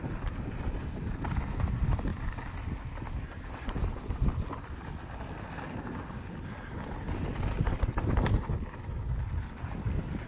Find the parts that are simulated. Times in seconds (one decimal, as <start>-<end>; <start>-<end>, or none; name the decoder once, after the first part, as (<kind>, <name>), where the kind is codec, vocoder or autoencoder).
none